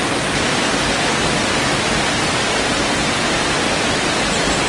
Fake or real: real